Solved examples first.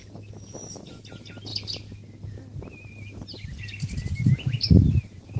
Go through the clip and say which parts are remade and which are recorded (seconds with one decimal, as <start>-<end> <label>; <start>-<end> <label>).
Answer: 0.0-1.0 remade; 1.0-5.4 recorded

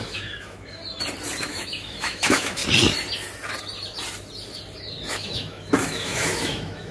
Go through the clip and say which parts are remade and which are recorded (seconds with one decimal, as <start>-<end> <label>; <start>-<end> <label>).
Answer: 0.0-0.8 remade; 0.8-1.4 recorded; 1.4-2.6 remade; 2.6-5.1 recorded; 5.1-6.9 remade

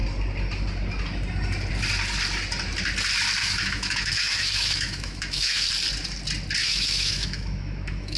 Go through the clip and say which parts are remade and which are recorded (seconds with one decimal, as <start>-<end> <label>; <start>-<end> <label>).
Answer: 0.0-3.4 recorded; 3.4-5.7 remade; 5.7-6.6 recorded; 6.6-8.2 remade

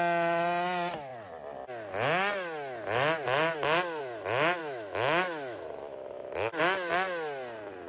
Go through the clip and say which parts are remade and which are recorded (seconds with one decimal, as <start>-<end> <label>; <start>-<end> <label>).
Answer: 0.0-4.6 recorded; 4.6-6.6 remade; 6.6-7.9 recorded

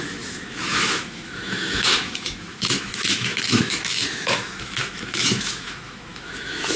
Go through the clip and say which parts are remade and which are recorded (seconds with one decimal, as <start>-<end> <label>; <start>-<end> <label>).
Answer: 0.0-6.8 remade

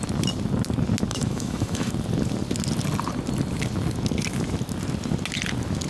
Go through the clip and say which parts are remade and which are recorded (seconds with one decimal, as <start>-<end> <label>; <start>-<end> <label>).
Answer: 0.0-1.1 recorded; 1.1-1.9 remade; 1.9-5.9 recorded

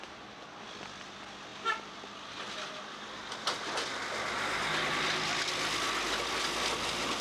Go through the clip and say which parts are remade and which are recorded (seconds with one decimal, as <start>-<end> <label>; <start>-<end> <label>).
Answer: 0.0-7.2 recorded